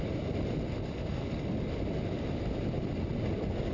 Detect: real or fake real